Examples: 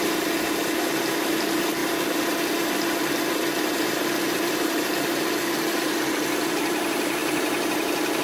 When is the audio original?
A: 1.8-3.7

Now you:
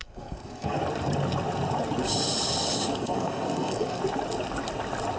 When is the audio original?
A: 0.8-2.9; 4.0-5.2